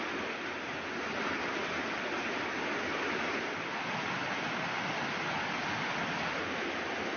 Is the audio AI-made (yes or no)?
no